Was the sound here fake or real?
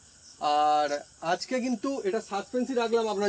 real